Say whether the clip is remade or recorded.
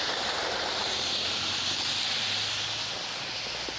recorded